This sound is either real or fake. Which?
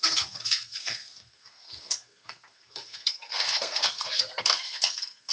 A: fake